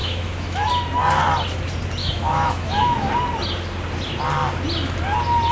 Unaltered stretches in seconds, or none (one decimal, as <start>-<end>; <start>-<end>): 0.7-2.0; 3.1-5.5